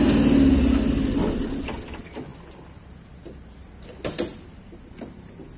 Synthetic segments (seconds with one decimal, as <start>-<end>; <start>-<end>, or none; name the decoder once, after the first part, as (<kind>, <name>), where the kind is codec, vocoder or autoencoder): none

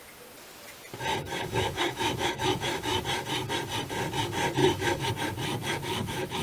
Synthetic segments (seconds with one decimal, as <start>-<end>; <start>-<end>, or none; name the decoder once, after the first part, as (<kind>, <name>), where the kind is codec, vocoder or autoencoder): 1.1-3.0 (autoencoder, DAC-VAE); 4.6-5.1; 5.6-6.4

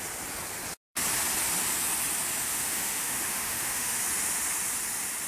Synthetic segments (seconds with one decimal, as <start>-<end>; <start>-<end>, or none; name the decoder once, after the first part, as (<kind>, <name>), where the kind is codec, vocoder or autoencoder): 2.5-4.0 (autoencoder, DAC-VAE)

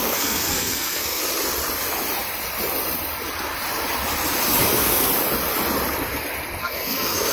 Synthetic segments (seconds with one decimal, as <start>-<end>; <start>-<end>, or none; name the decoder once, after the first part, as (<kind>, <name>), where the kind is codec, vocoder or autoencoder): 0.0-1.2 (codec, SNAC); 4.6-5.1; 6.6-7.3

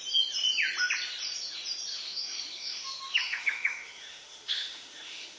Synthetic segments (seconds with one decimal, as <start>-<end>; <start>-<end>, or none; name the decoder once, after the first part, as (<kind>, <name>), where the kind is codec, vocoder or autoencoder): 1.9-5.4 (autoencoder, DAC-VAE)

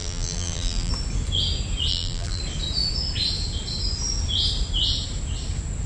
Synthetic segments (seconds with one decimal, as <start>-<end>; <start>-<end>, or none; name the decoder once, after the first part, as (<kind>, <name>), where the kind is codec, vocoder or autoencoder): 0.0-0.9 (vocoder, BigVGAN v2); 1.9-2.4

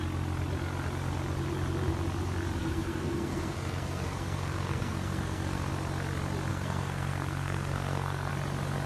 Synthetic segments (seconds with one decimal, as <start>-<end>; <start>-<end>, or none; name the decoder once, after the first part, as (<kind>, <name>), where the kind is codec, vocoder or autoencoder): 2.6-5.7 (codec, SNAC); 6.5-8.3

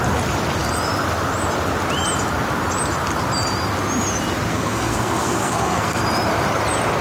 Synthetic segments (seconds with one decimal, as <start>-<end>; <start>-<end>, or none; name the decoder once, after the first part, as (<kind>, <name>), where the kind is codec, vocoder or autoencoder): 4.5-6.0 (codec, SNAC)